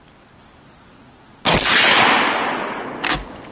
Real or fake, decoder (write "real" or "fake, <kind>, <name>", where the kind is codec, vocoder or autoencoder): real